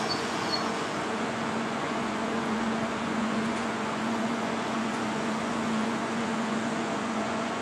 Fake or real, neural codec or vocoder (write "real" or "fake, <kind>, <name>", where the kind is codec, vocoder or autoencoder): fake, vocoder, Vocos